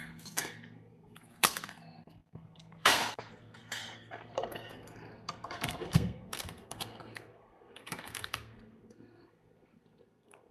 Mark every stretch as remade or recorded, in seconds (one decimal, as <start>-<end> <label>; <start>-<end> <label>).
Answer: 0.0-10.5 remade